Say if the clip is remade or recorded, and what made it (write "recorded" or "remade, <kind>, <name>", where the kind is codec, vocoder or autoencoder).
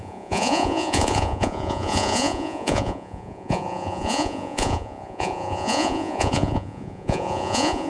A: remade, vocoder, Vocos